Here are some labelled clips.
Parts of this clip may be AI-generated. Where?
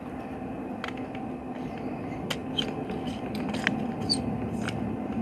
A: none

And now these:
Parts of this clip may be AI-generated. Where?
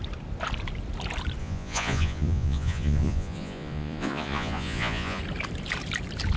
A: 1.4-5.2 (vocoder, Vocos)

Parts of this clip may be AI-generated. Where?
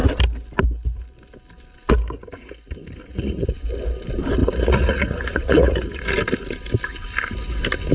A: 3.0-3.6 (vocoder, Vocos); 4.4-6.0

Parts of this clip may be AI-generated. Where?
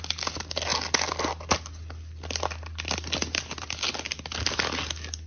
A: none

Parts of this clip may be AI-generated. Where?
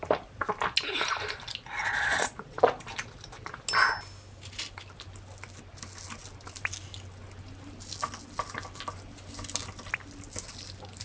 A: 1.8-2.6 (vocoder, Vocos)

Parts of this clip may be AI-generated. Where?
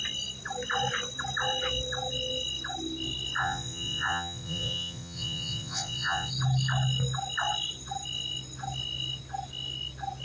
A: 3.4-6.3 (vocoder, Vocos)